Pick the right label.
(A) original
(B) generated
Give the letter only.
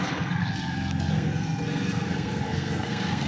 B